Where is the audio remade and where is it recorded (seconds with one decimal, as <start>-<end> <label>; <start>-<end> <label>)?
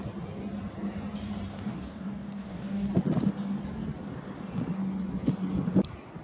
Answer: 0.0-1.5 recorded; 1.5-2.9 remade; 2.9-6.2 recorded